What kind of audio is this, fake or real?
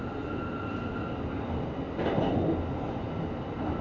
real